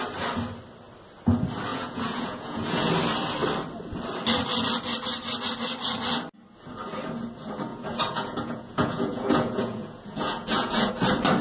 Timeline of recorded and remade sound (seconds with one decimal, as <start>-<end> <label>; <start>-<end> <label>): 0.0-1.7 recorded; 1.7-2.9 remade; 2.9-7.7 recorded; 7.7-10.9 remade; 10.9-11.4 recorded